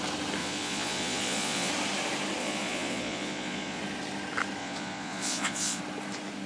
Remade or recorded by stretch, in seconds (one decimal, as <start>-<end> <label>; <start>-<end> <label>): 0.0-0.4 recorded; 0.4-1.7 remade; 1.7-2.4 recorded; 2.4-3.8 remade; 3.8-4.6 recorded; 4.6-5.8 remade; 5.8-6.5 recorded